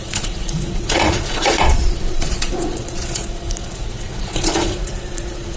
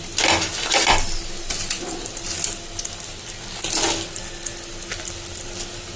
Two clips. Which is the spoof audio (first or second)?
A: first